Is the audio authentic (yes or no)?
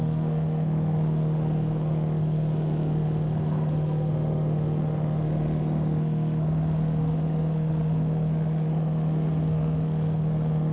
no